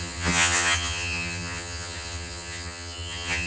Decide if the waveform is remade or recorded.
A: remade